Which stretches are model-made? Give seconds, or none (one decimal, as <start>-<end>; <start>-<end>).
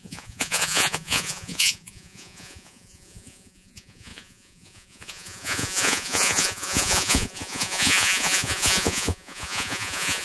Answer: 0.0-10.2